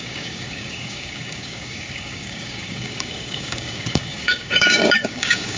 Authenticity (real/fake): fake